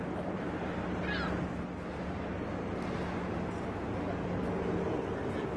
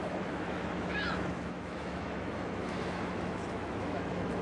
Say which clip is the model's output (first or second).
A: second